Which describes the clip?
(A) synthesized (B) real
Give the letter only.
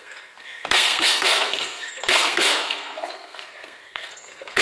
A